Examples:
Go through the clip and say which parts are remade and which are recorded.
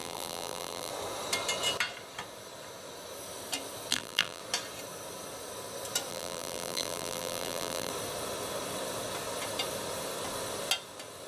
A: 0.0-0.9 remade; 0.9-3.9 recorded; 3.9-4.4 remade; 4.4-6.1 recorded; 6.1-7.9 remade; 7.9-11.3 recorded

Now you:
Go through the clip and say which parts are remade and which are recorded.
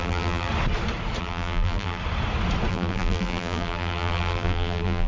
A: 0.0-0.5 remade; 0.5-1.2 recorded; 1.2-2.0 remade; 2.0-2.7 recorded; 2.7-5.1 remade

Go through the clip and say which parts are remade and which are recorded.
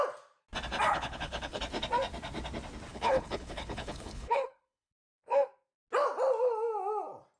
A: 0.0-0.9 recorded; 0.9-1.6 remade; 1.6-2.9 recorded; 2.9-4.9 remade; 4.9-7.4 recorded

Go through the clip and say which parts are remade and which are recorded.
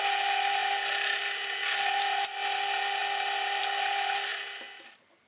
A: 0.0-5.3 recorded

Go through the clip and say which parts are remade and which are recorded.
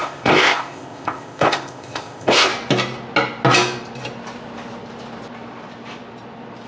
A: 0.0-2.5 remade; 2.5-6.7 recorded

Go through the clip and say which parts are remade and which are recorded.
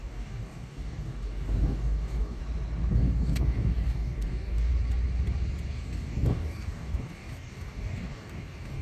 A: 0.0-2.4 remade; 2.4-2.9 recorded; 2.9-4.7 remade; 4.7-5.7 recorded; 5.7-8.8 remade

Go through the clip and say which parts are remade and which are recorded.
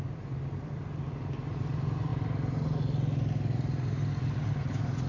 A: 0.0-5.1 recorded